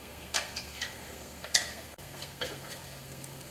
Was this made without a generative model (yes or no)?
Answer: no